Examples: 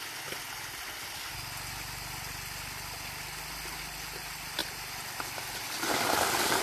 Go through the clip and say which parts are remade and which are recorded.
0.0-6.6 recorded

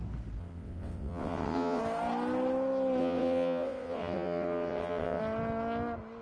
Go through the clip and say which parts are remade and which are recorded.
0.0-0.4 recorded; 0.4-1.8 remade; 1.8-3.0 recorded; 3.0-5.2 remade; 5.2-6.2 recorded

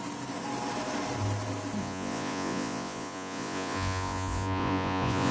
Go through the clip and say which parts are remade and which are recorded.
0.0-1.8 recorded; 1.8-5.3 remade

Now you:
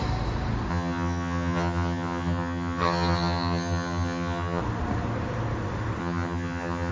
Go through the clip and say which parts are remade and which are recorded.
0.0-0.7 recorded; 0.7-4.6 remade; 4.6-6.0 recorded; 6.0-6.9 remade